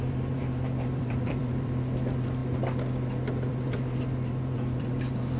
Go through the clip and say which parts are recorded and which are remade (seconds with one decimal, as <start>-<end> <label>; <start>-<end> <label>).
0.0-2.4 remade; 2.4-3.5 recorded; 3.5-5.4 remade